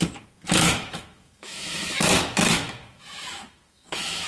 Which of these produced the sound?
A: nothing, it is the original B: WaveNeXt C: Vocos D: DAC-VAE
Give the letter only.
D